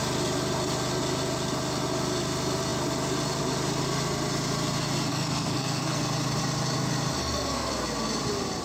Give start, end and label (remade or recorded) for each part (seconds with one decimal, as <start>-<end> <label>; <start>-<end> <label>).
0.0-5.1 recorded; 5.1-6.0 remade; 6.0-7.2 recorded; 7.2-7.7 remade; 7.7-8.6 recorded